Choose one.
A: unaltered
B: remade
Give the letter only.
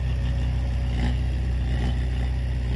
A